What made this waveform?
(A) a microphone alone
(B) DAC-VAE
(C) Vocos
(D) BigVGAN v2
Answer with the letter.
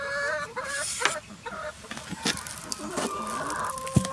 A